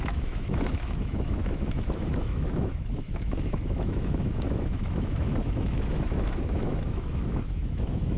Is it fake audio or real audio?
fake